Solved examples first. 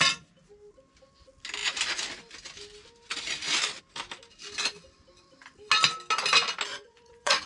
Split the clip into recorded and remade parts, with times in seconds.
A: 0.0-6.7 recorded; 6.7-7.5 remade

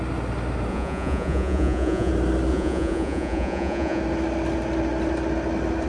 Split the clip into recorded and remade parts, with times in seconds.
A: 0.0-0.7 recorded; 0.7-2.1 remade; 2.1-2.5 recorded; 2.5-4.0 remade; 4.0-5.9 recorded